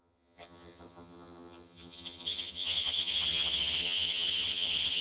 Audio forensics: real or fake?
fake